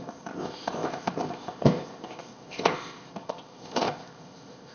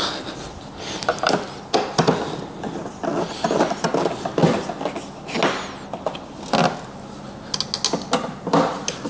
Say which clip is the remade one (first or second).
first